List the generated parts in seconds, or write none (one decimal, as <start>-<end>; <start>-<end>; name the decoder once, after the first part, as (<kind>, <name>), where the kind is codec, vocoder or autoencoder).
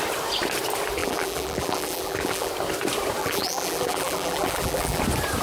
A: 1.0-2.5 (vocoder, BigVGAN v2); 3.2-5.0